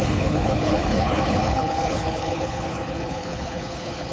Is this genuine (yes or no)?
no